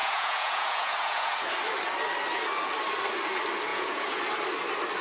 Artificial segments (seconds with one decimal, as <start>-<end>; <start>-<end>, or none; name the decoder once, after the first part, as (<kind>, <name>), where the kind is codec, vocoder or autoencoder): 0.0-1.5 (vocoder, Vocos); 3.7-4.2